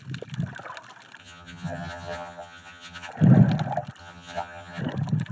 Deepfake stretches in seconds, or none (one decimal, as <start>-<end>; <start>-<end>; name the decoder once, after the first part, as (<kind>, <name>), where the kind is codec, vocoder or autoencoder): 1.2-3.1 (vocoder, HiFi-GAN); 4.0-4.8